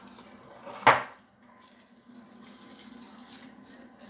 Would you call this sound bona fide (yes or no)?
yes